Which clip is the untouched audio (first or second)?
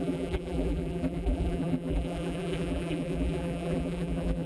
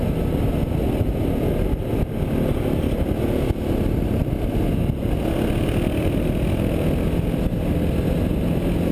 second